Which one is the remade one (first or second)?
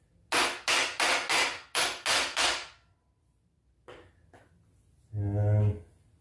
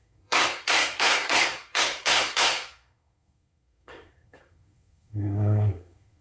second